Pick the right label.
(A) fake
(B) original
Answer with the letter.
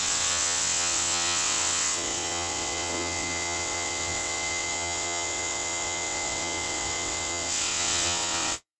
A